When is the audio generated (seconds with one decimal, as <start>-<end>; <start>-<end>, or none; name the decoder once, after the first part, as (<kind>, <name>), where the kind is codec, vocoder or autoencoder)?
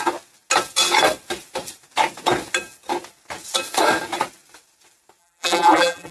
5.2-6.1 (vocoder, BigVGAN v2)